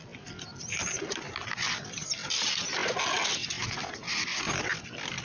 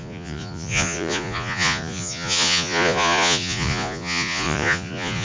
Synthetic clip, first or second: second